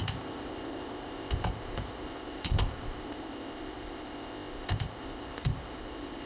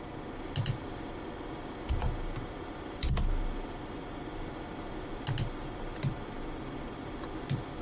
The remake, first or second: first